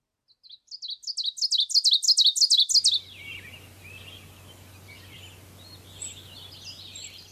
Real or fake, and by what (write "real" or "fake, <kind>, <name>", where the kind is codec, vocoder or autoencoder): real